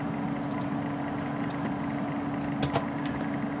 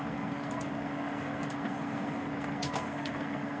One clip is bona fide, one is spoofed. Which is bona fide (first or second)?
first